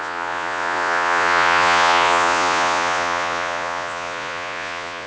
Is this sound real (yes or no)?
no